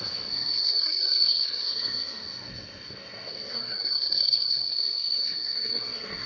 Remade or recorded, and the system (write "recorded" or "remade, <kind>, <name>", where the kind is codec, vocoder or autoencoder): remade, codec, SNAC